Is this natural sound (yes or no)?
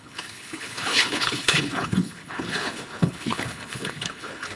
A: no